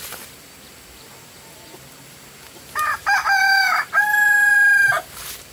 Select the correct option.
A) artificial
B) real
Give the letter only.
B